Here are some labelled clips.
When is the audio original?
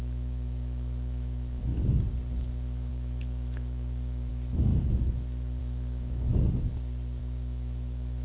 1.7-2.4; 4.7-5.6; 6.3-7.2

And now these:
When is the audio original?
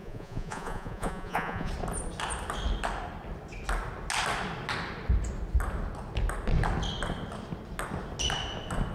1.7-8.9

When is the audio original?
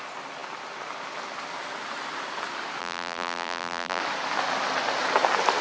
0.0-2.8; 4.0-5.6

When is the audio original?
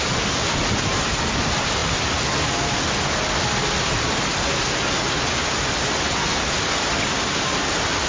0.0-8.1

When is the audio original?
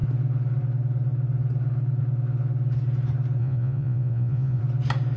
0.0-3.4; 4.6-5.2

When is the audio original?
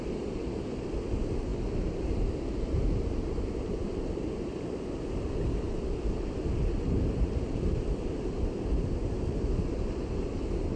0.0-10.8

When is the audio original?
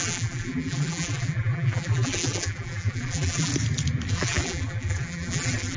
3.5-4.1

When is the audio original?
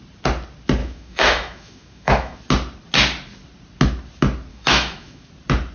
0.0-0.8; 2.4-4.5; 5.3-5.7